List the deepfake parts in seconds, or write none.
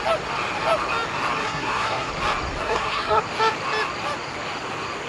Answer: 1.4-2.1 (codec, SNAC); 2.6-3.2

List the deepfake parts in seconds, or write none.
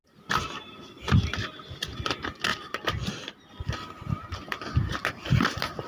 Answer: none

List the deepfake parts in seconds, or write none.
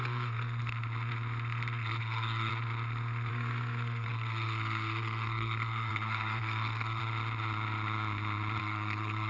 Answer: 0.0-0.6 (codec, SNAC); 2.0-2.5; 3.3-7.0; 8.6-9.3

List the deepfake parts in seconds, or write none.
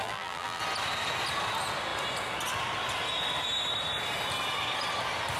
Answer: 0.0-0.6 (vocoder, BigVGAN v2)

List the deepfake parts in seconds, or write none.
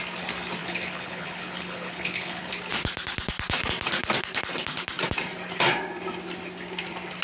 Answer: 0.6-2.5 (codec, HILCodec)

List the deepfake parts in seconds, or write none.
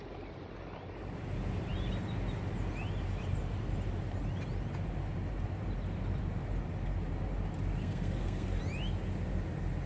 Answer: 7.8-8.6 (codec, SNAC)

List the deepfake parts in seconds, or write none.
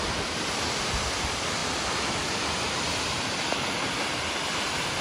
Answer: none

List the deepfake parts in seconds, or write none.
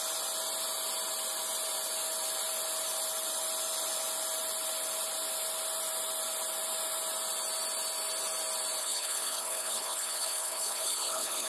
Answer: 8.8-11.5 (codec, HILCodec)